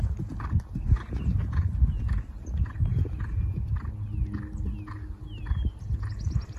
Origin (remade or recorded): recorded